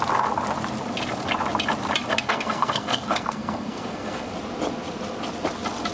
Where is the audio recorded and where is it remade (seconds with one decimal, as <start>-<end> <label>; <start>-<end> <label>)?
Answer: 0.0-2.1 recorded; 2.1-4.3 remade; 4.3-5.9 recorded